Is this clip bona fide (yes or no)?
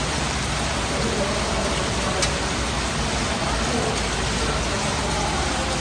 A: yes